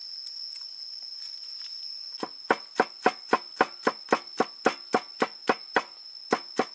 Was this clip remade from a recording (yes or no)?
no